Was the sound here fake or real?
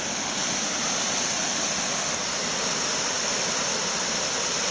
real